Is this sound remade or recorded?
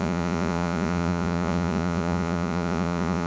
remade